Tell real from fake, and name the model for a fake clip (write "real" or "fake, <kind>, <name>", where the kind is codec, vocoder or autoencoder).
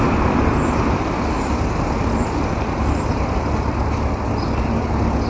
real